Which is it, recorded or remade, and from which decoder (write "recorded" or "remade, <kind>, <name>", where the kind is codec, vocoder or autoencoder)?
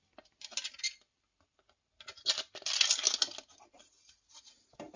recorded